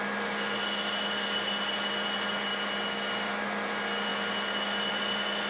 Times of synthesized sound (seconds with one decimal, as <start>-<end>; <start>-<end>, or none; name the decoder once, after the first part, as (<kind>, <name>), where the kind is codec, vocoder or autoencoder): none